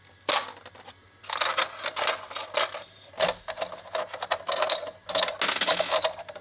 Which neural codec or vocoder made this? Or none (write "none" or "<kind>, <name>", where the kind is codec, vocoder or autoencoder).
none